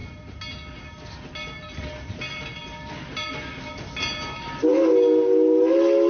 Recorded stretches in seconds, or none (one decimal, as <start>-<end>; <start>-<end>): 0.0-6.1